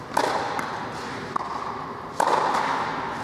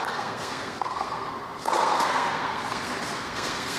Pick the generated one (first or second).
second